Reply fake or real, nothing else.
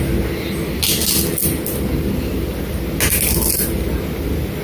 real